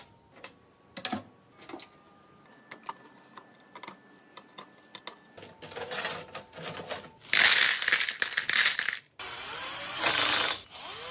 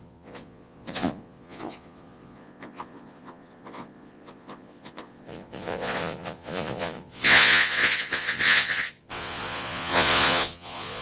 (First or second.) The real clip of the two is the first